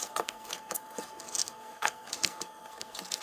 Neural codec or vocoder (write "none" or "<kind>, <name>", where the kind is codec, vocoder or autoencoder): codec, SNAC